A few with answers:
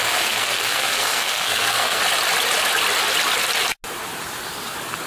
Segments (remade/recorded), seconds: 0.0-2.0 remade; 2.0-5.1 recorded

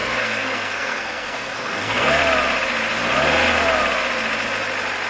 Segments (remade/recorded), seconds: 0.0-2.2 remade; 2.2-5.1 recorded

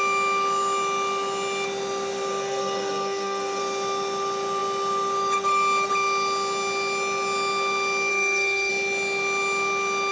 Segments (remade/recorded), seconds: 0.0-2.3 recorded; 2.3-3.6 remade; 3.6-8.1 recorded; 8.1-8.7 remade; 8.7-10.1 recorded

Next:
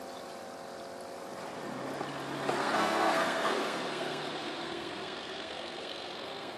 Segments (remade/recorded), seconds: 0.0-2.6 recorded; 2.6-6.6 remade

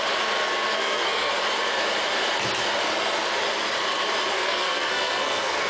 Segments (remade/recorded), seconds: 0.0-0.7 recorded; 0.7-1.3 remade; 1.3-4.3 recorded; 4.3-5.7 remade